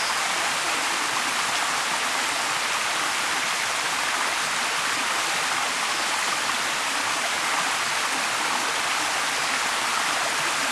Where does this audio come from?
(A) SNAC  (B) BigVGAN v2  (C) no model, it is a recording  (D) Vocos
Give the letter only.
C